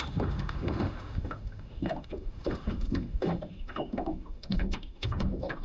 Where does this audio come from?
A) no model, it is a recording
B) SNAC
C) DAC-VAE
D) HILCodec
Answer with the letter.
C